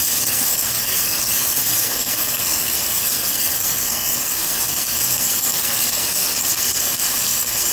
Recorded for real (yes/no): no